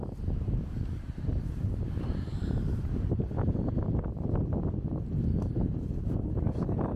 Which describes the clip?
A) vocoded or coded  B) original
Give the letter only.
B